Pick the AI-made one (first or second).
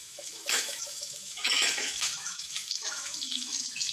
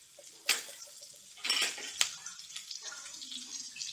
first